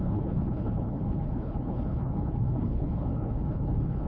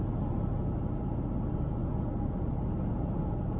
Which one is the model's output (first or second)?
first